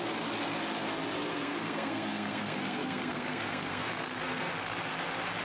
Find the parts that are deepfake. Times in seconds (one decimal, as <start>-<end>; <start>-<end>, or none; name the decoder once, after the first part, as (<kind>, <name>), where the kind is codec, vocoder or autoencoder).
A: 1.3-4.5 (codec, SNAC)